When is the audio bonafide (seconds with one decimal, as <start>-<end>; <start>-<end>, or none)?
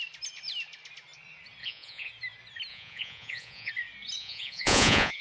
0.0-1.6; 2.1-2.7; 3.7-4.2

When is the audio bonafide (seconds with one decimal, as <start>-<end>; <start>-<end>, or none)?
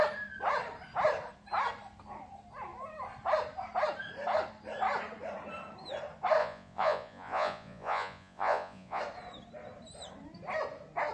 0.0-6.4; 9.0-11.1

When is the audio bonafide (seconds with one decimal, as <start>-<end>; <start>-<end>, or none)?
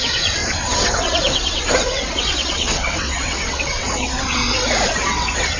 4.4-4.9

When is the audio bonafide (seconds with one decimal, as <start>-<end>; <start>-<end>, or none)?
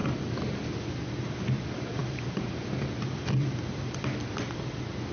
0.0-5.1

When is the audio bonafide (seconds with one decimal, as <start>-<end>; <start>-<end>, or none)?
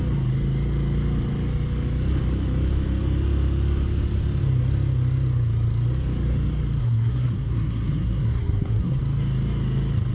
0.0-6.8; 9.0-10.1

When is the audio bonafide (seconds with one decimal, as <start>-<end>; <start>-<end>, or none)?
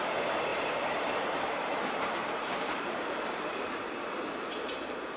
none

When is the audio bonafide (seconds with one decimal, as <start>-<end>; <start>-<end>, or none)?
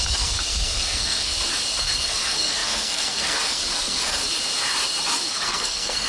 1.3-1.8; 4.2-5.3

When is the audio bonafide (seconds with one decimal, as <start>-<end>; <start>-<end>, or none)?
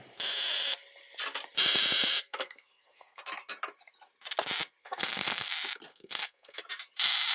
0.0-2.2; 3.2-4.8; 5.5-5.9; 6.6-7.3